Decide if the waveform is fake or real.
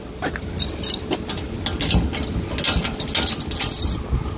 real